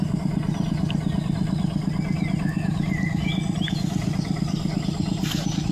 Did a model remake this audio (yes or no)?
no